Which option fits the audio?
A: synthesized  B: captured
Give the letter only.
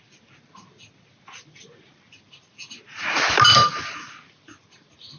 B